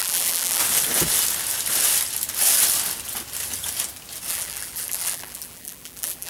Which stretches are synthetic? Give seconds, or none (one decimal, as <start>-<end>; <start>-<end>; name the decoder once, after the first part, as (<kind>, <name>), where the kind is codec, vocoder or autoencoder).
0.0-0.6 (vocoder, BigVGAN v2); 4.3-6.3

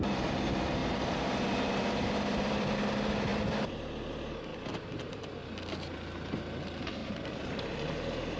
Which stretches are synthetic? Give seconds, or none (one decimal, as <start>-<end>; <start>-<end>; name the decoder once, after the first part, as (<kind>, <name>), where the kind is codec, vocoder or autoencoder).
0.8-2.8 (vocoder, BigVGAN v2); 3.3-4.1; 4.5-6.3; 7.0-8.4

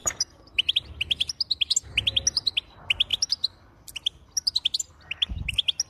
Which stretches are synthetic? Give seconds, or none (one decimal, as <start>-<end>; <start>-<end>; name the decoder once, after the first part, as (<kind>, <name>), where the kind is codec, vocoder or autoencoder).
3.1-4.5 (vocoder, BigVGAN v2)

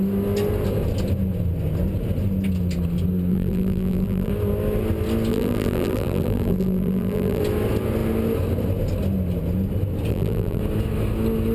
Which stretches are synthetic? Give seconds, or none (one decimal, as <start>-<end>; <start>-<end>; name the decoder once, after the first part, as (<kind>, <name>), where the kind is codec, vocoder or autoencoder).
3.3-4.3 (vocoder, BigVGAN v2); 5.3-7.4; 10.1-10.6

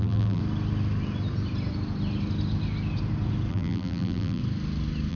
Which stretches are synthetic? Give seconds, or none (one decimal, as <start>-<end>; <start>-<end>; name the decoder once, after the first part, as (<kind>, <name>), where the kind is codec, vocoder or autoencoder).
0.0-0.4 (vocoder, BigVGAN v2); 3.5-4.4

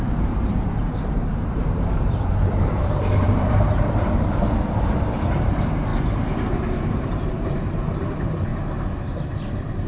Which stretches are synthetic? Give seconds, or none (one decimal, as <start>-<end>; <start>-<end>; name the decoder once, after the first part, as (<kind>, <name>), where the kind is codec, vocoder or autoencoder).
0.0-8.5 (vocoder, BigVGAN v2); 9.5-9.9